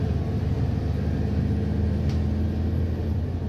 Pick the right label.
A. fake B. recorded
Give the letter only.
B